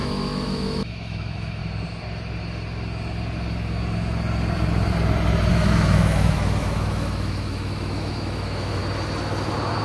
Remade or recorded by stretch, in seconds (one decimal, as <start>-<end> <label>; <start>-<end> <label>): 0.0-1.6 remade; 1.6-5.5 recorded; 5.5-8.8 remade; 8.8-9.8 recorded